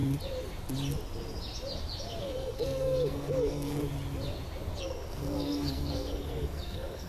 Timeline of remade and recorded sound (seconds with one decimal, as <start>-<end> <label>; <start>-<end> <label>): 0.0-2.2 recorded; 2.2-3.8 remade; 3.8-4.8 recorded; 4.8-7.1 remade